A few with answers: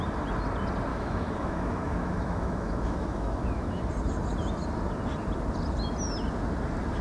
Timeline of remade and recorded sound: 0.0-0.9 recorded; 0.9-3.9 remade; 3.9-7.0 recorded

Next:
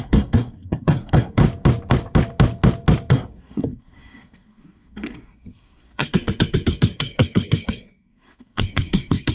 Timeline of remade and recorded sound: 0.0-1.4 remade; 1.4-3.1 recorded; 3.1-9.3 remade

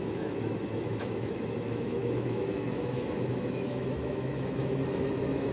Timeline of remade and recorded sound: 0.0-5.5 remade

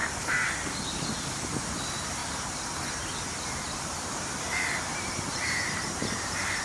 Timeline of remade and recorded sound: 0.0-0.8 remade; 0.8-2.2 recorded; 2.2-6.6 remade

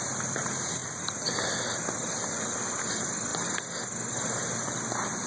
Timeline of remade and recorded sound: 0.0-5.3 recorded

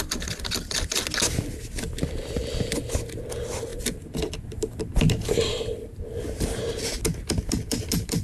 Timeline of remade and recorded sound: 0.0-8.2 recorded